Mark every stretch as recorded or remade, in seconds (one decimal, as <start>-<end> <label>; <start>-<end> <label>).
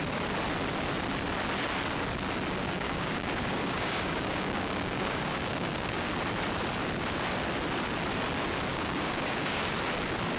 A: 0.0-2.6 recorded; 2.6-6.1 remade; 6.1-8.7 recorded; 8.7-9.7 remade; 9.7-10.4 recorded